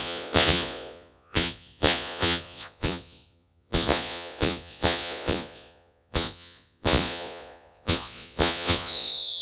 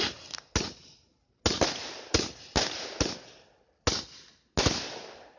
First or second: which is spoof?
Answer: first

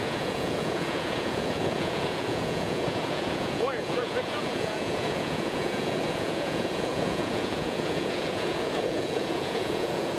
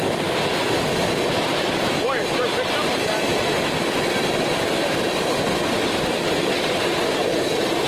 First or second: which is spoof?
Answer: first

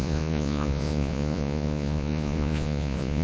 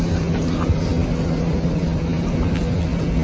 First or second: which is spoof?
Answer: first